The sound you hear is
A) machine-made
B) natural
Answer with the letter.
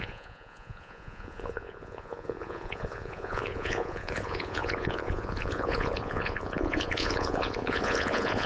A